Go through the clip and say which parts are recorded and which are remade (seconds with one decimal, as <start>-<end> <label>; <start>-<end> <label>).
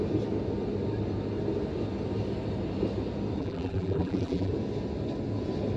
0.0-3.4 recorded; 3.4-4.5 remade; 4.5-5.8 recorded